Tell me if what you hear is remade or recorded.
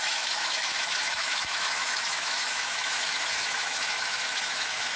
remade